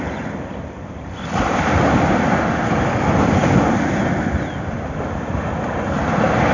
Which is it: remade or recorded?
recorded